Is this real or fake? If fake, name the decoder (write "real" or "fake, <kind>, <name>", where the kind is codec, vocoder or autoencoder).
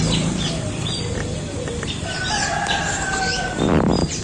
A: fake, vocoder, BigVGAN v2